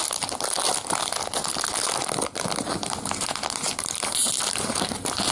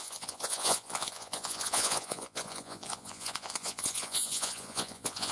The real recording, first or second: first